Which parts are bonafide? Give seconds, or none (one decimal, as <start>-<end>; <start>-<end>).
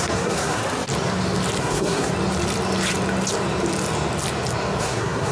0.6-1.6; 2.1-4.8